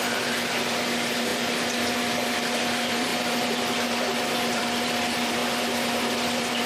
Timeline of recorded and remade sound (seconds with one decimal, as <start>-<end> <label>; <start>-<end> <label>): 0.0-5.4 remade; 5.4-5.9 recorded; 5.9-6.7 remade